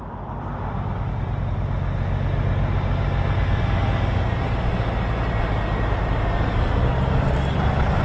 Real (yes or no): yes